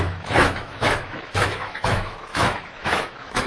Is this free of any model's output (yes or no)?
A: no